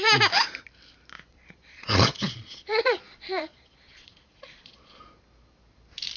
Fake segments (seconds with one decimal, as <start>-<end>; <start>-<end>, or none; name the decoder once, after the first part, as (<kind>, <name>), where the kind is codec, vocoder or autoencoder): 1.3-5.0 (vocoder, Vocos)